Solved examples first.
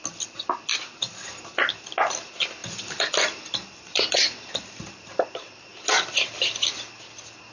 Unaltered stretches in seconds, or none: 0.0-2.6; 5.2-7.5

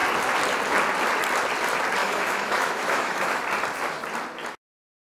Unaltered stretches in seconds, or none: 0.0-2.0; 3.4-5.0

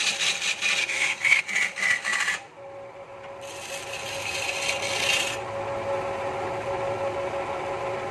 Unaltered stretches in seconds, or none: 0.0-0.8; 1.4-8.1

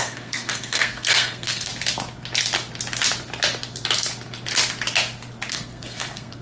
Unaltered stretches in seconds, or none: 1.7-5.5

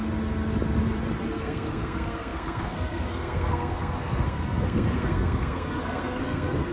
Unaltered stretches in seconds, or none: 0.0-1.4

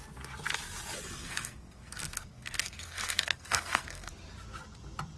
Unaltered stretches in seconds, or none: 0.0-1.2; 4.1-5.2

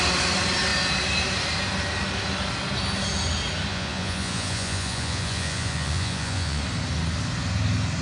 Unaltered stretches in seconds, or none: 0.0-3.7; 6.6-8.0